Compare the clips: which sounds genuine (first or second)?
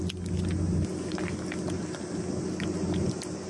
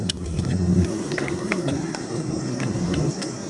first